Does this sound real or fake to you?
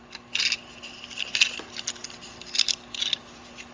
real